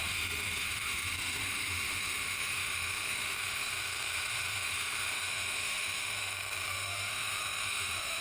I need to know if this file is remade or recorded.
remade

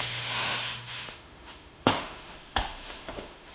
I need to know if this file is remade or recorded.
remade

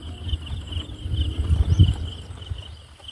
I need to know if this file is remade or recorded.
recorded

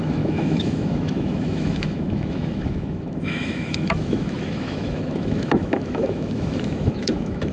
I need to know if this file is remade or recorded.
remade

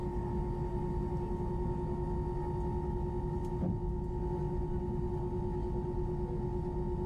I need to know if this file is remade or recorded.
recorded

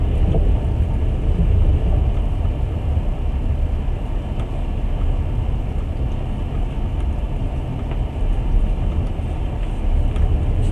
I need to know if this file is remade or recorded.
recorded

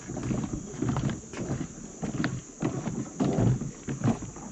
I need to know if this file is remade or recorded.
recorded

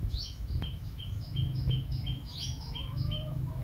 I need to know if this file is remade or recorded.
remade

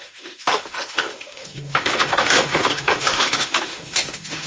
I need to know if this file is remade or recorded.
remade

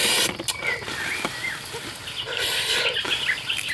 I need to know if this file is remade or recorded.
recorded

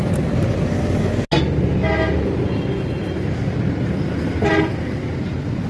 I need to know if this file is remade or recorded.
recorded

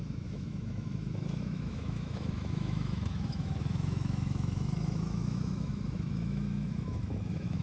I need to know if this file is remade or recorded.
remade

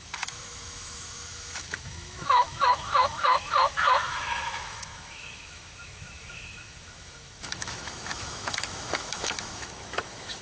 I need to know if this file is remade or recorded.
remade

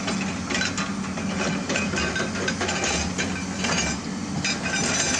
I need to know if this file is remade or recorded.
recorded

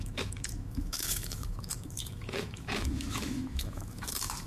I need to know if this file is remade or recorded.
remade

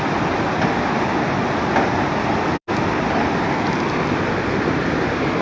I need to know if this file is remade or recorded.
recorded